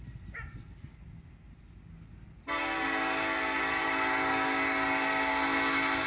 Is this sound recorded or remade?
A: recorded